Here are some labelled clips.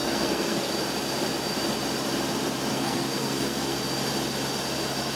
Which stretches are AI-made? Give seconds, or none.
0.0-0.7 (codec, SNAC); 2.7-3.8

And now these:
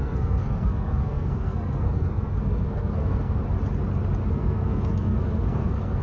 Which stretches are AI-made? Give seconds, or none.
0.0-3.4 (codec, SNAC); 4.3-6.0

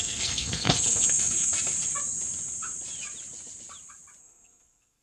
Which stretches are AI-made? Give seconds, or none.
0.0-1.5 (codec, SNAC); 4.2-5.0

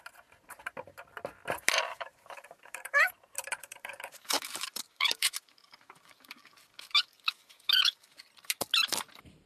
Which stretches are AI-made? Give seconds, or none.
1.9-3.1 (codec, DAC); 3.6-8.2

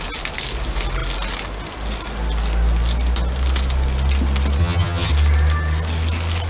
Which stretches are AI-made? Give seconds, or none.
4.6-5.1 (vocoder, HiFi-GAN)

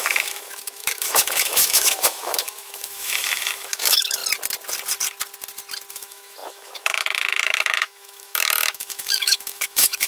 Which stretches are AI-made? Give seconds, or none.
0.0-4.2 (autoencoder, DAC-VAE); 5.9-10.1